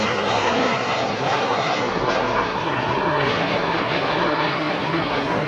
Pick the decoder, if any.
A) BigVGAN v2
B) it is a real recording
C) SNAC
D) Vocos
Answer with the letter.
C